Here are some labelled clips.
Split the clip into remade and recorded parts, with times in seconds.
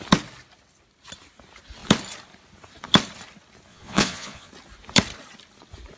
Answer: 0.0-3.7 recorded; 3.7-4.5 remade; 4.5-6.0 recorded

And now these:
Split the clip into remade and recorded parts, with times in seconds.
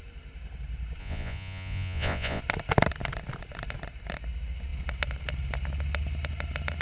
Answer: 0.0-1.0 recorded; 1.0-2.4 remade; 2.4-6.8 recorded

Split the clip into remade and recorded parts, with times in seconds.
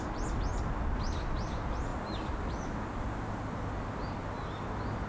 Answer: 0.0-5.1 recorded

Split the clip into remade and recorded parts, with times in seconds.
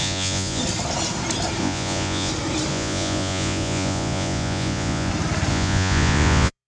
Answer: 0.0-0.6 remade; 0.6-1.6 recorded; 1.6-2.3 remade; 2.3-2.7 recorded; 2.7-5.1 remade; 5.1-5.5 recorded; 5.5-6.7 remade